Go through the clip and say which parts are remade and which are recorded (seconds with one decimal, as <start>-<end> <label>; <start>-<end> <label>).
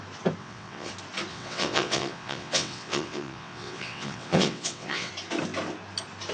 0.0-0.4 recorded; 0.4-0.9 remade; 0.9-1.3 recorded; 1.3-5.1 remade; 5.1-6.3 recorded